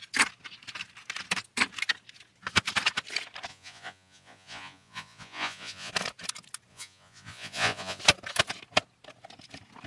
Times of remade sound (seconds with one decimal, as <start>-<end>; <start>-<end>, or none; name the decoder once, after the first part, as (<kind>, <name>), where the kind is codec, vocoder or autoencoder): 3.5-5.9 (vocoder, Vocos); 6.7-8.0